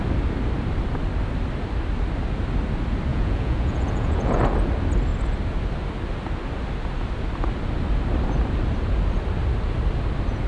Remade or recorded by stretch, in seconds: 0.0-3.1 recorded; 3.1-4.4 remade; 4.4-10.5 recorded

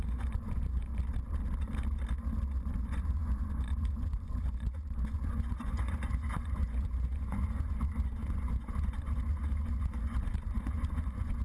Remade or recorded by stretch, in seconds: 0.0-0.9 remade; 0.9-2.8 recorded; 2.8-11.4 remade

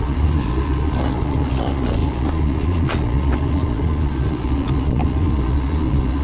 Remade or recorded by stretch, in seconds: 0.0-6.2 remade

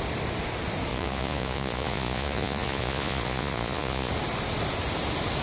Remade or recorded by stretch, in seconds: 0.0-0.9 recorded; 0.9-4.1 remade; 4.1-5.4 recorded